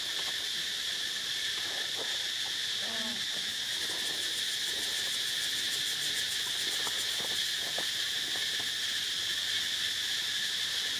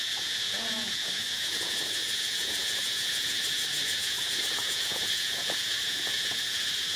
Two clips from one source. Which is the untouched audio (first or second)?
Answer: first